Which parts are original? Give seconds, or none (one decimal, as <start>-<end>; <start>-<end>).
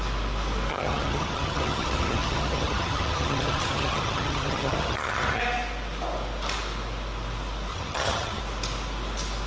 0.0-0.7; 5.4-7.7; 8.4-9.5